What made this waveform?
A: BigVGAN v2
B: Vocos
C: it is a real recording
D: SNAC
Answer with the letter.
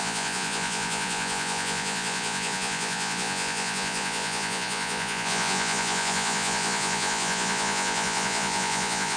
B